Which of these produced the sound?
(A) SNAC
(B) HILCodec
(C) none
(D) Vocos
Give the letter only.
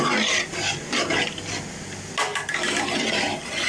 C